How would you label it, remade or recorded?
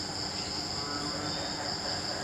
recorded